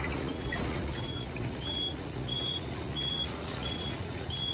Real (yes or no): no